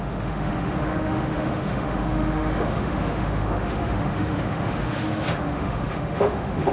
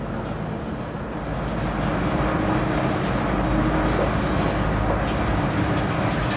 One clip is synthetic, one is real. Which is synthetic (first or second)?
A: first